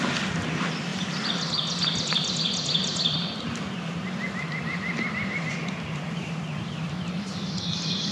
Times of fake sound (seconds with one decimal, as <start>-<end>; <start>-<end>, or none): none